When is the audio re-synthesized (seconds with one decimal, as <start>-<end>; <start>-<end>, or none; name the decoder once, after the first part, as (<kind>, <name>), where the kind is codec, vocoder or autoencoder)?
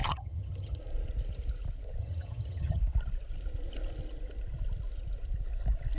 0.0-0.8 (vocoder, HiFi-GAN); 2.0-2.8